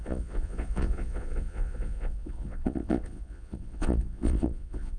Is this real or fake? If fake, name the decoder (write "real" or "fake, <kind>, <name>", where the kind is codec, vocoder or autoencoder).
fake, vocoder, Vocos